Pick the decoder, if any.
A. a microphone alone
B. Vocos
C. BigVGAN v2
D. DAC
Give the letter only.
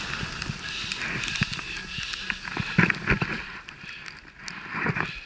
A